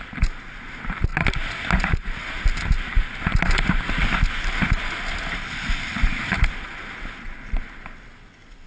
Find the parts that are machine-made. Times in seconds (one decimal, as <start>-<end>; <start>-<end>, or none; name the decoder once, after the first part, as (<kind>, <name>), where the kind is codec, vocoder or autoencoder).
none